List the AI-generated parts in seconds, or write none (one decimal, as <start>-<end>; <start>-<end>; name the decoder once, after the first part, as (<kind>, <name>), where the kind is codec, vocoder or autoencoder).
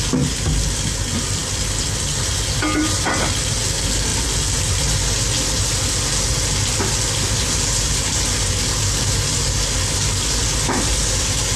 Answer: none